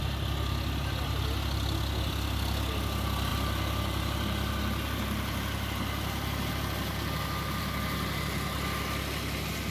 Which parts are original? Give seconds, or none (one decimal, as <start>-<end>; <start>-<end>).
0.0-9.7